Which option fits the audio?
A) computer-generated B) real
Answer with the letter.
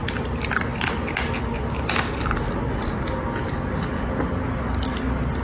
B